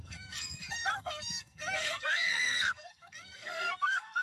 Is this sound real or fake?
fake